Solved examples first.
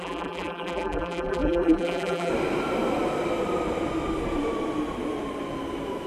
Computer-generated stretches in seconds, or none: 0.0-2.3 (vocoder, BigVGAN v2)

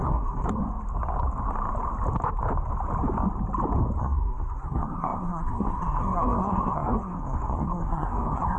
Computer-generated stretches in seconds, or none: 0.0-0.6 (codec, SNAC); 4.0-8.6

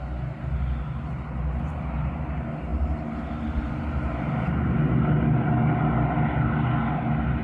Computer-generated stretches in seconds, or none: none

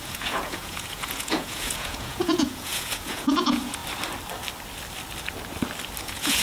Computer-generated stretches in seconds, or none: 0.0-3.8 (vocoder, Vocos); 6.0-6.4

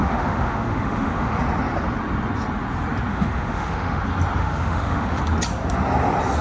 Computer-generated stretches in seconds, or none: 0.0-1.4 (autoencoder, DAC-VAE); 3.1-4.0; 4.4-5.2

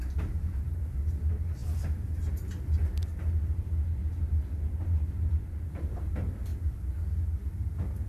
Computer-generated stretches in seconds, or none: none

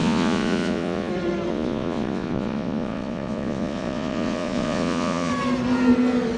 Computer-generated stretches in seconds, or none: 0.0-1.1 (vocoder, Vocos); 1.5-5.3

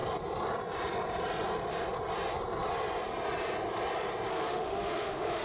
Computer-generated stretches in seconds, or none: 4.3-5.4 (autoencoder, DAC-VAE)